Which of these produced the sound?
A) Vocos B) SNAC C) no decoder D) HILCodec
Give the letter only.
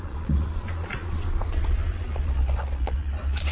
A